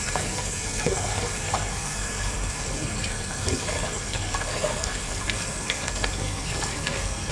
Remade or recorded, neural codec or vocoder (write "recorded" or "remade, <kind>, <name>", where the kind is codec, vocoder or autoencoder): remade, codec, SNAC